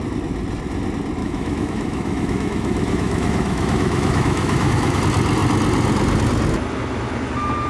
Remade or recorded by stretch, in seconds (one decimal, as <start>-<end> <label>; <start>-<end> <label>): 0.0-1.2 recorded; 1.2-5.0 remade; 5.0-7.7 recorded